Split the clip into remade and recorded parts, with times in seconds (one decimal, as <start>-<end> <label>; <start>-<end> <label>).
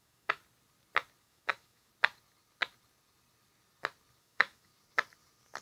0.0-0.4 remade; 0.4-1.2 recorded; 1.2-1.9 remade; 1.9-4.2 recorded; 4.2-4.7 remade; 4.7-5.6 recorded